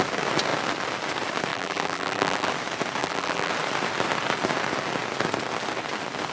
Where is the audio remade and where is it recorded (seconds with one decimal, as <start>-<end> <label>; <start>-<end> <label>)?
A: 0.0-1.5 recorded; 1.5-2.5 remade; 2.5-3.0 recorded; 3.0-3.5 remade; 3.5-6.3 recorded